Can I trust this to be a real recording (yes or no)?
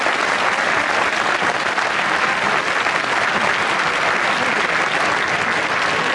yes